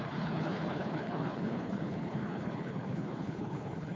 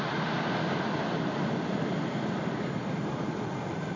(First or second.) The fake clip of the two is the first